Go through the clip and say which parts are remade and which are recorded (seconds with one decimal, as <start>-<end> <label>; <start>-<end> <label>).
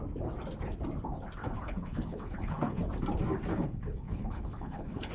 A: 0.0-1.4 recorded; 1.4-2.9 remade; 2.9-3.5 recorded; 3.5-5.1 remade